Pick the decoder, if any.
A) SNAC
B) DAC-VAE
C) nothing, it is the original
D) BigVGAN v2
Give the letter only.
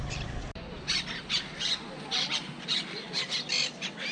C